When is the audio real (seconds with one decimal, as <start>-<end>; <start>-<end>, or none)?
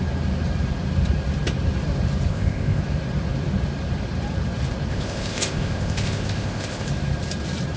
0.0-2.3; 2.8-4.9; 6.9-7.8